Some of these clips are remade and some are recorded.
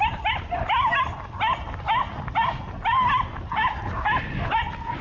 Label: recorded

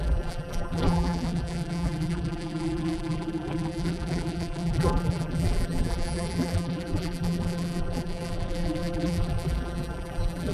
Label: remade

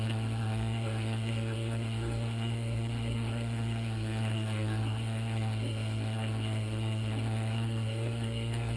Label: remade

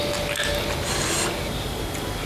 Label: recorded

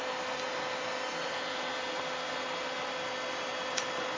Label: recorded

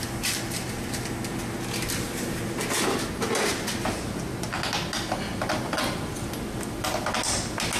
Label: recorded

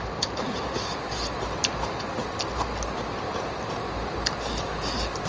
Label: recorded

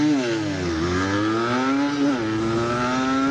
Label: recorded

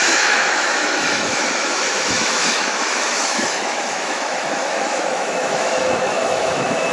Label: remade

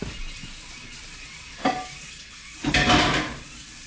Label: recorded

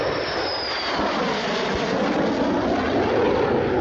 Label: recorded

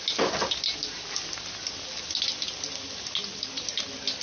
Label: recorded